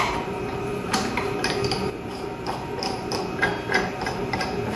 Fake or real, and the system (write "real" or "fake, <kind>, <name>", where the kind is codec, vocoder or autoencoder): fake, vocoder, BigVGAN v2